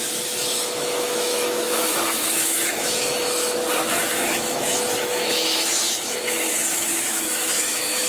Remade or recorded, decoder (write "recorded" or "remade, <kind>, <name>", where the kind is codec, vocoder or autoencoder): remade, autoencoder, DAC-VAE